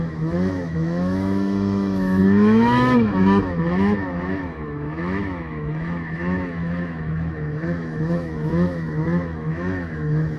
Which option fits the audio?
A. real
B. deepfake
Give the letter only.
B